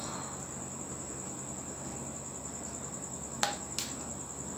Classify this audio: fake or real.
real